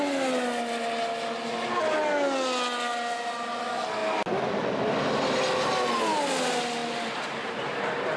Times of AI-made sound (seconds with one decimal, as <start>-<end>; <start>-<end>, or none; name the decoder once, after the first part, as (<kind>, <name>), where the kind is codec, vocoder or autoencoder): none